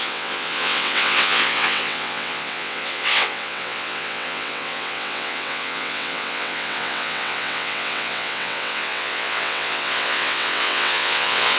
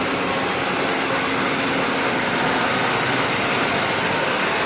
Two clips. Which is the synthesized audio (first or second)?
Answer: first